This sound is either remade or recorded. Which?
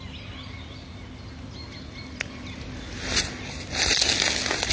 recorded